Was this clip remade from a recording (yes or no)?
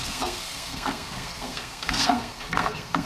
yes